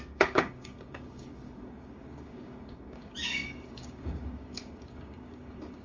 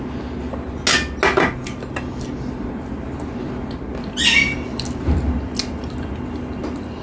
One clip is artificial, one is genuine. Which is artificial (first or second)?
first